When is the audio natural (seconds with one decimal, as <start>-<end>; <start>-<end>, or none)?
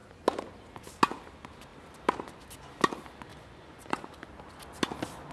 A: 0.0-3.3; 4.3-5.3